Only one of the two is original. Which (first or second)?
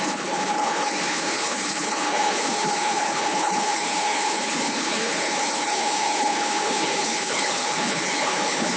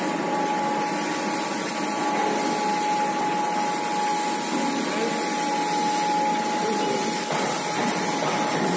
second